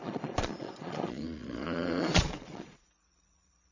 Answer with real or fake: fake